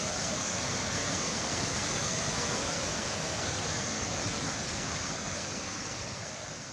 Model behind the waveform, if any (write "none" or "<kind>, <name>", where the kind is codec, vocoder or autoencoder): codec, SNAC